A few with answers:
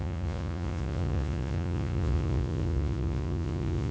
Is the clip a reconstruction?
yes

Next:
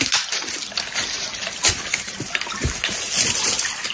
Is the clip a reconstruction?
no